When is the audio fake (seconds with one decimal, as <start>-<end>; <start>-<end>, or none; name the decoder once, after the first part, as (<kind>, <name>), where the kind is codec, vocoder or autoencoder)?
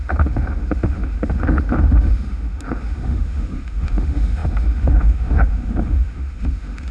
0.0-6.9 (autoencoder, DAC-VAE)